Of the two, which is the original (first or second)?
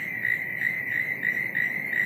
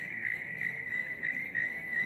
first